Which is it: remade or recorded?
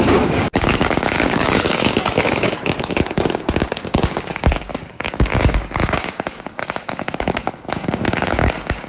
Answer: remade